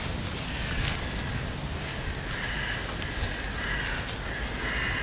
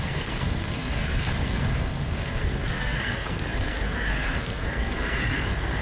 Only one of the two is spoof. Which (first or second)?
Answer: second